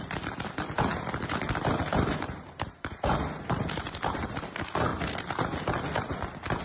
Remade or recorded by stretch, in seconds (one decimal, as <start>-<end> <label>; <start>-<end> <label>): 0.0-0.9 recorded; 0.9-4.4 remade; 4.4-4.9 recorded; 4.9-6.6 remade